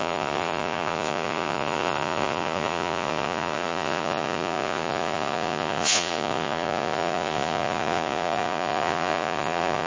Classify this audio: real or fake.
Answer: fake